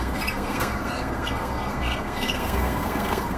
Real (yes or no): no